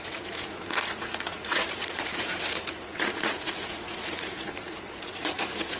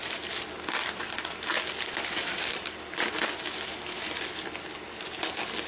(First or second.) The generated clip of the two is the first